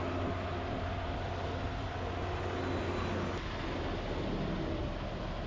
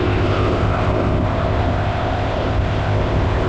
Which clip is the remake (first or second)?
second